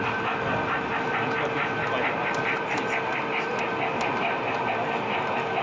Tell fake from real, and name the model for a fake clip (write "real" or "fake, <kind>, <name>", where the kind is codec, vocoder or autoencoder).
real